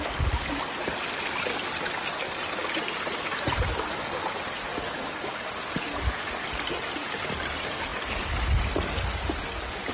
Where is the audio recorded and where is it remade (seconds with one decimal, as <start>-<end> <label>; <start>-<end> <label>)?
0.0-9.9 recorded

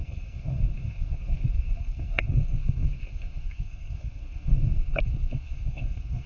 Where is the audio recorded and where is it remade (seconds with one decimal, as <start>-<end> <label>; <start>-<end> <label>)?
0.0-6.3 remade

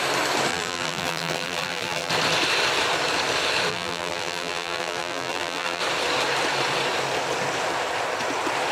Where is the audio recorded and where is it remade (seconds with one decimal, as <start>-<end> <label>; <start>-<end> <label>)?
0.0-0.5 recorded; 0.5-2.1 remade; 2.1-3.7 recorded; 3.7-5.8 remade; 5.8-8.7 recorded

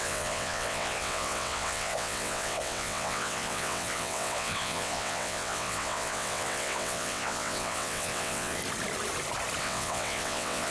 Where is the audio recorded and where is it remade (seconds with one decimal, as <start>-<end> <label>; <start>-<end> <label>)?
0.0-8.6 remade; 8.6-9.6 recorded; 9.6-10.7 remade

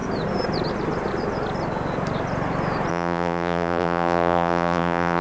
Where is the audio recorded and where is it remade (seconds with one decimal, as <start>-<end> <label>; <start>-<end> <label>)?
0.0-2.9 recorded; 2.9-5.2 remade

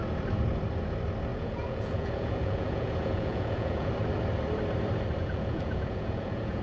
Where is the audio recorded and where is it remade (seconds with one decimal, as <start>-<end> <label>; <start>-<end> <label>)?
0.0-1.3 recorded; 1.3-3.9 remade; 3.9-5.2 recorded; 5.2-6.6 remade

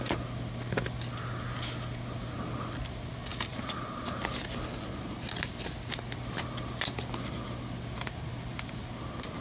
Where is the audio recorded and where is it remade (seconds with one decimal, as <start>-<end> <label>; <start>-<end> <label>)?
0.0-3.3 recorded; 3.3-4.1 remade; 4.1-9.4 recorded

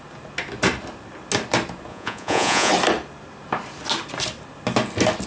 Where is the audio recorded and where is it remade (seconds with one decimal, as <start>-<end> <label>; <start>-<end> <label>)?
0.0-1.9 recorded; 1.9-2.7 remade; 2.7-5.3 recorded